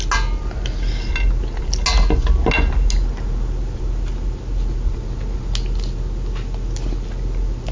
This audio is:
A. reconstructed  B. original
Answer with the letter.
B